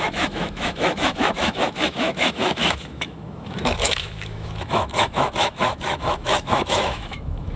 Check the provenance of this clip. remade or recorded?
remade